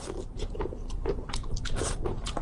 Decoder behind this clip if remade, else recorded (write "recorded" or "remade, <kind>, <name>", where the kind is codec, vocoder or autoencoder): remade, vocoder, BigVGAN v2